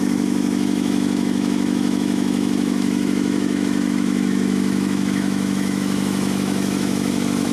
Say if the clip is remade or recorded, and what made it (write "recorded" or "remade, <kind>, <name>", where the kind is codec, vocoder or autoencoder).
remade, autoencoder, DAC-VAE